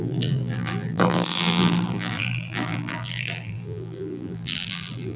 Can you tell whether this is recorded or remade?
remade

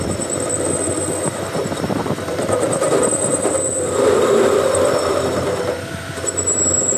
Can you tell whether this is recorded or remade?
recorded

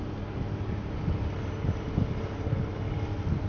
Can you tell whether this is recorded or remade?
recorded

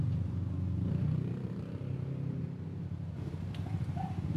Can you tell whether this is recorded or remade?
remade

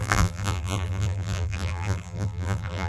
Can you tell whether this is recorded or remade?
remade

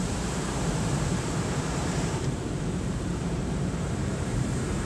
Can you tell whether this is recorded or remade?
remade